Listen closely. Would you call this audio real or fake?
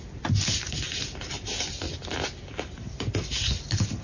real